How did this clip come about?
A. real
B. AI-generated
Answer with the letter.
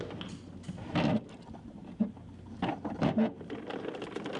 A